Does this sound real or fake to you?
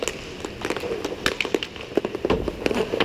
real